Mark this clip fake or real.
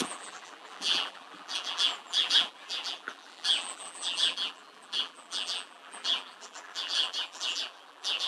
fake